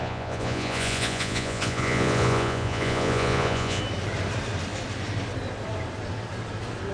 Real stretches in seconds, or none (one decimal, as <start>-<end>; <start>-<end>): 3.8-6.9